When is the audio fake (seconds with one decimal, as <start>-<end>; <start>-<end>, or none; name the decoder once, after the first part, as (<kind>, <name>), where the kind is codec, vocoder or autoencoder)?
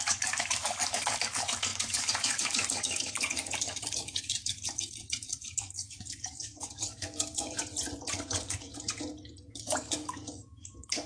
0.0-7.6 (codec, DAC); 8.1-8.7; 9.5-11.1